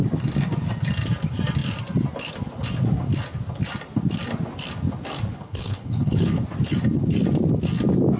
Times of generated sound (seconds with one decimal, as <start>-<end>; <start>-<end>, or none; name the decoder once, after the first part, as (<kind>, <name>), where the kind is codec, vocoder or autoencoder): 5.3-6.4 (codec, HILCodec)